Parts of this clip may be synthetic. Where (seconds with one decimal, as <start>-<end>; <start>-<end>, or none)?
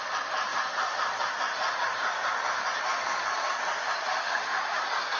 4.1-4.8